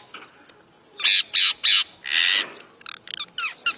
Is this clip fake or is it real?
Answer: real